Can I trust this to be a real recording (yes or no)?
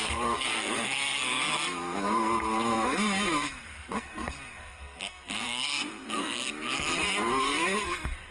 no